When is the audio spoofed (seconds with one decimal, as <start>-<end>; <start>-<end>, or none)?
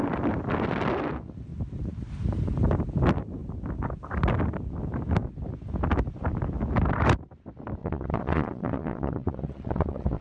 7.8-10.2